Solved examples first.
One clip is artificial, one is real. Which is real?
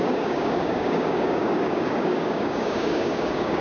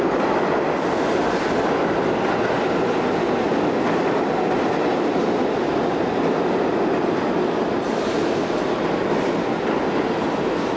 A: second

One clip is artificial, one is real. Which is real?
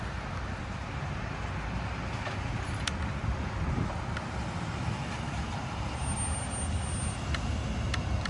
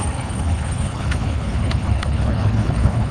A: first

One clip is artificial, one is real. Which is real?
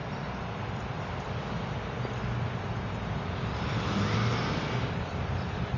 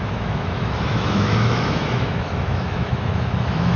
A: first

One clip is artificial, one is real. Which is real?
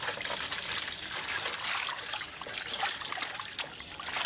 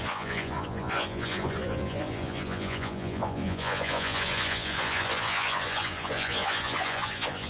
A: first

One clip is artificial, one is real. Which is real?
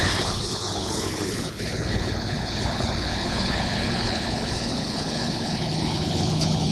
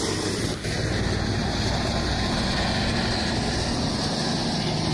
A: second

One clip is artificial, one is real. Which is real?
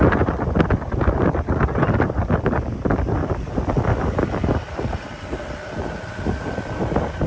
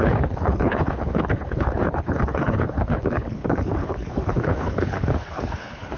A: first